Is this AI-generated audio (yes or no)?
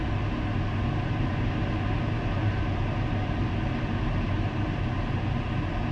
no